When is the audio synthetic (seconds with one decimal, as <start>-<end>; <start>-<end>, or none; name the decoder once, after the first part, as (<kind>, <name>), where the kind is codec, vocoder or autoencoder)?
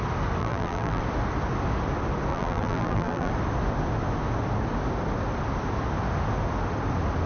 0.4-1.0 (vocoder, BigVGAN v2); 2.3-3.3